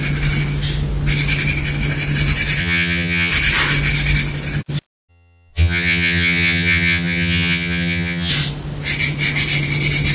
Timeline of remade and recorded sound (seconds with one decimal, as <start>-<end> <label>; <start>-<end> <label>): 0.0-2.6 recorded; 2.6-3.3 remade; 3.3-5.1 recorded; 5.1-8.3 remade; 8.3-10.1 recorded